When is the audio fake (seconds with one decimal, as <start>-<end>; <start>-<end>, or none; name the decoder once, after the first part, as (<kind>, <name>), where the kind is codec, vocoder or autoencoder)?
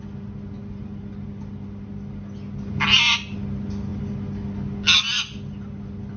none